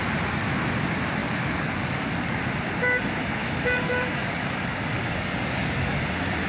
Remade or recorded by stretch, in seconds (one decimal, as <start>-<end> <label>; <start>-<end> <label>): 0.0-1.2 recorded; 1.2-2.4 remade; 2.4-3.4 recorded; 3.4-6.0 remade; 6.0-6.5 recorded